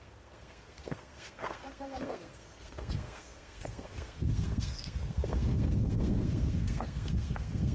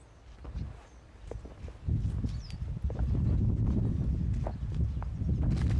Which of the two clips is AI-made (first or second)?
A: first